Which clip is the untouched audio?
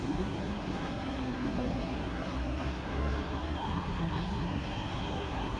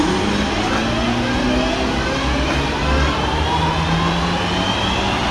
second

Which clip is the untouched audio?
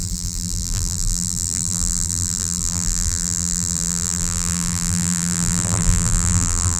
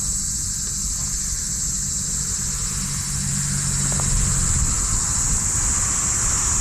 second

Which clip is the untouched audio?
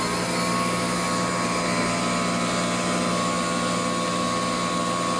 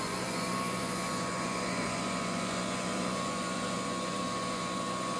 first